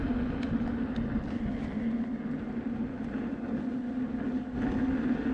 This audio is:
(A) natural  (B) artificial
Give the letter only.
A